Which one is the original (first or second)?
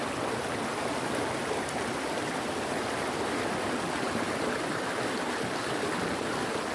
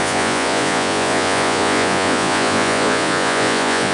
first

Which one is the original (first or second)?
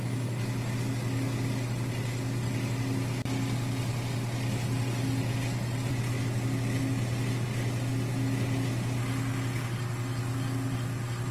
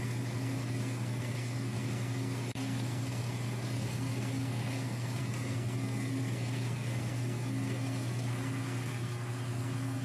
first